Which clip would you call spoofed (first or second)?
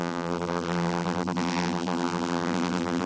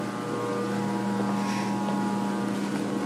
first